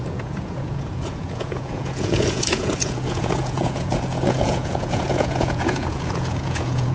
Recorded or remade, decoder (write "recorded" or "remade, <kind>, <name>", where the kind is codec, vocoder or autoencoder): remade, vocoder, Vocos